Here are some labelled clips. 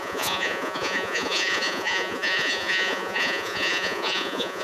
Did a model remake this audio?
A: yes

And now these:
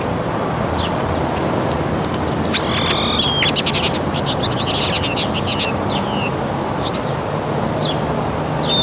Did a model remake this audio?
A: no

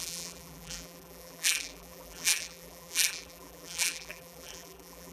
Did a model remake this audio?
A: yes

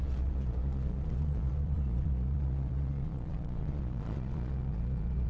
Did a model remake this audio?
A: yes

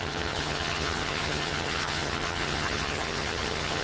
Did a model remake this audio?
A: yes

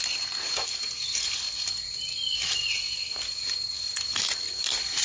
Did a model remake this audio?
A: no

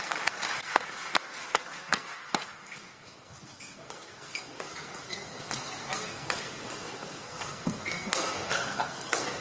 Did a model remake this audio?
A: yes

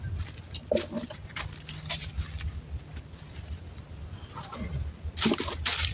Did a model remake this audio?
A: no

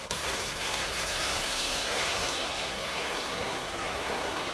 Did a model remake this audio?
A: yes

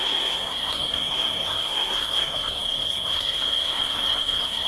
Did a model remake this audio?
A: yes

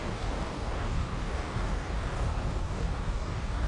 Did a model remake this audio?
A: yes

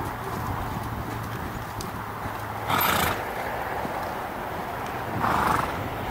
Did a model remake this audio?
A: no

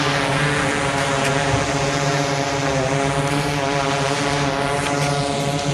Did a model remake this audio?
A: no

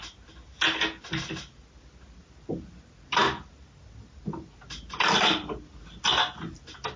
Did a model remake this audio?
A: no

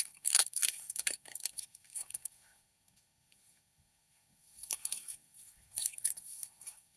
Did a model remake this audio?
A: yes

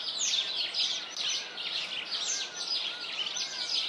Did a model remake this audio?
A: no